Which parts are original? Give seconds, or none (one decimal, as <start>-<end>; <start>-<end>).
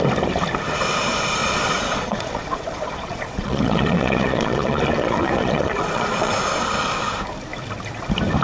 0.0-1.4; 6.3-8.4